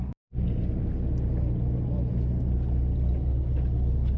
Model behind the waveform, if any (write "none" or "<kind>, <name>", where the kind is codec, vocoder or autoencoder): none